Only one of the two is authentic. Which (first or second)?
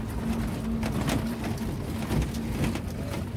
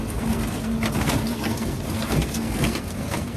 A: first